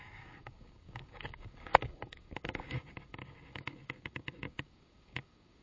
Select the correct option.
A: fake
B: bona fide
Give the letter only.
A